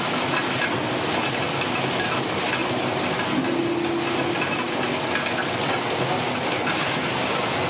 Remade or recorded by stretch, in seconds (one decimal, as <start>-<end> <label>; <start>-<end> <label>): 0.0-5.4 recorded; 5.4-5.9 remade; 5.9-7.7 recorded